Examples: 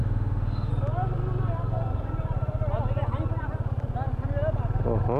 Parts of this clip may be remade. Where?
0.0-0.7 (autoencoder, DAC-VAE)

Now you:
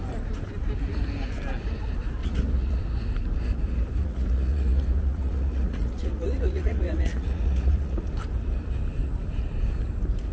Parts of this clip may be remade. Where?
2.2-2.8 (vocoder, Vocos); 4.0-8.1

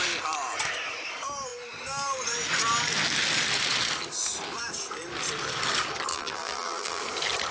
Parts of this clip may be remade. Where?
6.1-7.0 (vocoder, BigVGAN v2)

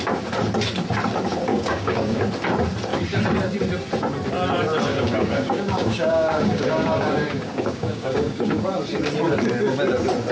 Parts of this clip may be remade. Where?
1.5-2.2 (codec, DAC); 4.9-8.6

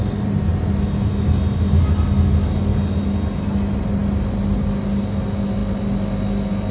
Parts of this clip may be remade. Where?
none